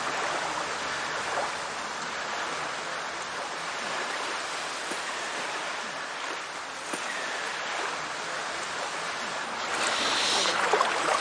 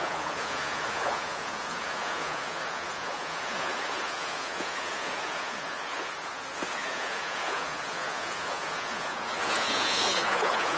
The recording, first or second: first